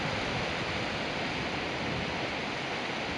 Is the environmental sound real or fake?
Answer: real